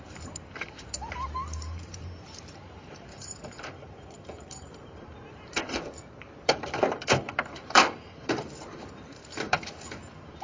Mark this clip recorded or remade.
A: remade